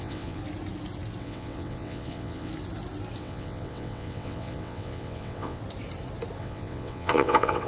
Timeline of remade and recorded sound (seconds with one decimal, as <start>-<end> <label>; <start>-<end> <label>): 0.0-0.4 remade; 0.4-1.2 recorded; 1.2-2.5 remade; 2.5-3.2 recorded; 3.2-5.6 remade; 5.6-6.4 recorded; 6.4-7.7 remade

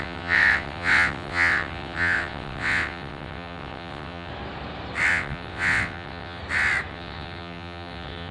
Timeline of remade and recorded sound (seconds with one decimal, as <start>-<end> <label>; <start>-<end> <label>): 0.0-4.3 remade; 4.3-5.1 recorded; 5.1-6.4 remade; 6.4-6.9 recorded; 6.9-8.3 remade

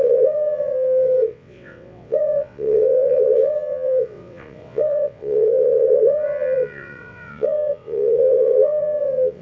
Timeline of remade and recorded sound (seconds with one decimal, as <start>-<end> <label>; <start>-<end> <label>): 0.0-9.4 remade